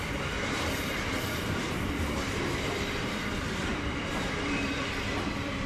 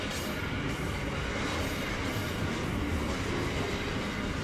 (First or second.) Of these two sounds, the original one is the second